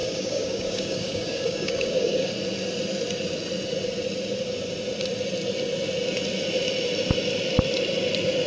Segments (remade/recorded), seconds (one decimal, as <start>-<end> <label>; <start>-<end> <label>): 0.0-2.3 remade; 2.3-8.5 recorded